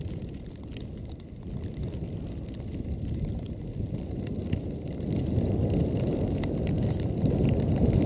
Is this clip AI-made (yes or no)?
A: no